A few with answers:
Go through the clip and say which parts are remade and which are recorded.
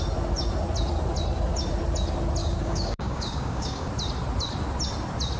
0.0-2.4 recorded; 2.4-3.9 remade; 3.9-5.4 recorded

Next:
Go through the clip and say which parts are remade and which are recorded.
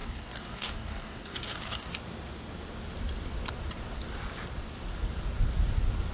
0.0-1.9 remade; 1.9-6.1 recorded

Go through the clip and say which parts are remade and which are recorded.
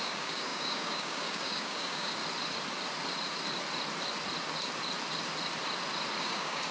0.0-2.2 remade; 2.2-6.2 recorded; 6.2-6.7 remade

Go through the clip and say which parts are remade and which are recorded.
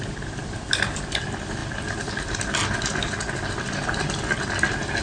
0.0-5.0 recorded